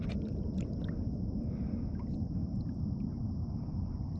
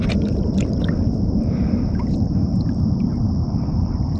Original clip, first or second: first